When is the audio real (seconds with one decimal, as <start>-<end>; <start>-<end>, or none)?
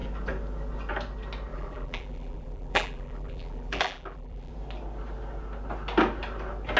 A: 0.0-1.5; 4.5-6.8